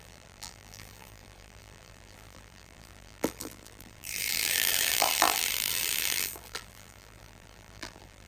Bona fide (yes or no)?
no